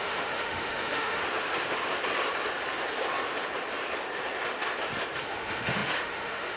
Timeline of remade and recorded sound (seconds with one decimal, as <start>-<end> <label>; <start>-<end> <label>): 0.0-1.2 remade; 1.2-5.2 recorded; 5.2-6.6 remade